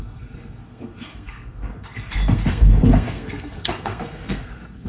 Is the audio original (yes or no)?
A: no